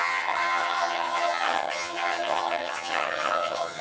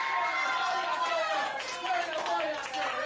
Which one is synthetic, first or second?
first